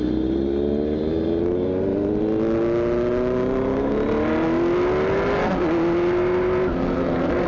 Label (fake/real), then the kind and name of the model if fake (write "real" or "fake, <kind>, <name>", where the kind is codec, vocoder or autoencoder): real